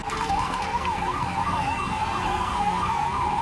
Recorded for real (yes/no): no